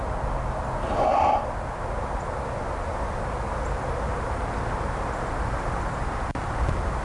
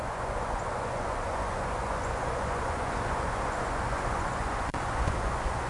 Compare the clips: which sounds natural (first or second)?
first